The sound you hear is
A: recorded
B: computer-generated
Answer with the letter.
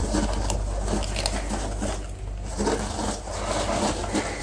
A